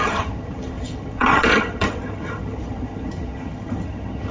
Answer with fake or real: fake